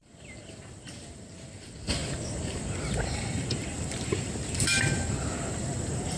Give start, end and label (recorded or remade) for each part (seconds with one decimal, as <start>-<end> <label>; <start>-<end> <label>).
0.0-6.2 remade